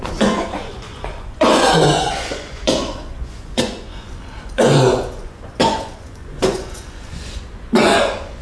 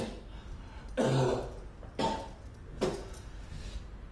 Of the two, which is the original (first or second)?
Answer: second